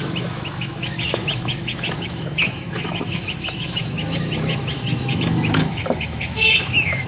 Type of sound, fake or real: fake